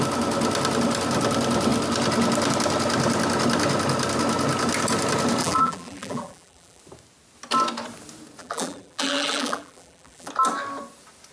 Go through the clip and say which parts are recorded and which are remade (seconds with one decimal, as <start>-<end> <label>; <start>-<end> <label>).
0.0-5.4 recorded; 5.4-6.8 remade; 6.8-8.4 recorded; 8.4-10.3 remade; 10.3-11.3 recorded